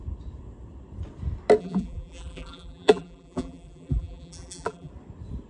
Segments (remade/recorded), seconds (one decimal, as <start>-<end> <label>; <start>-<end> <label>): 0.0-1.6 recorded; 1.6-4.9 remade; 4.9-5.5 recorded